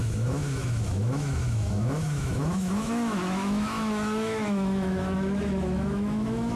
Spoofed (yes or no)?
yes